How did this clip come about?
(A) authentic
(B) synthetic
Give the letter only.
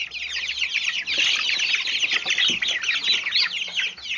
A